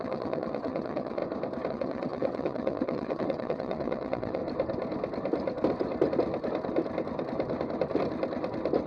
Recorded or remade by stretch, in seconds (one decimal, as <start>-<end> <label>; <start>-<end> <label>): 0.0-1.2 remade; 1.2-1.7 recorded; 1.7-4.4 remade; 4.4-8.9 recorded